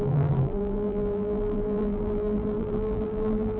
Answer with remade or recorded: remade